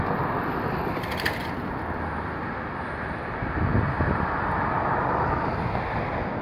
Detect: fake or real real